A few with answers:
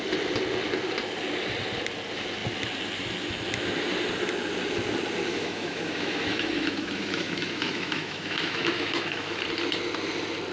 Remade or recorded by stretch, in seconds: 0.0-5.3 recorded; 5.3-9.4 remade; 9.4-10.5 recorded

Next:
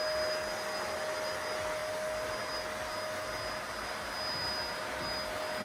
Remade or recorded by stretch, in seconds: 0.0-5.6 recorded

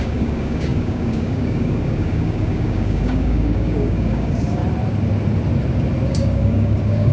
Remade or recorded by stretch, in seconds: 0.0-4.6 remade; 4.6-6.1 recorded; 6.1-7.1 remade

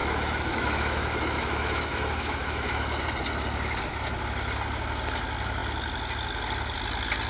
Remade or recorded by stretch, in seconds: 0.0-3.0 remade; 3.0-7.3 recorded

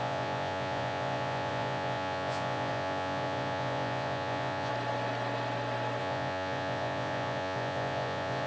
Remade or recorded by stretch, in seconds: 0.0-4.7 remade; 4.7-6.0 recorded; 6.0-8.5 remade

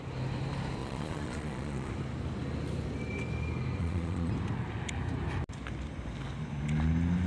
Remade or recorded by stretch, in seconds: 0.0-0.8 recorded; 0.8-1.9 remade; 1.9-3.8 recorded; 3.8-4.3 remade; 4.3-7.3 recorded